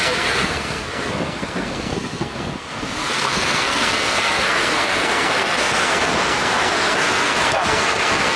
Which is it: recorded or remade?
remade